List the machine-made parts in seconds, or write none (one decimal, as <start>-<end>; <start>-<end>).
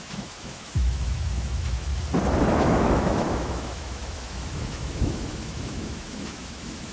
0.0-1.9; 2.4-6.9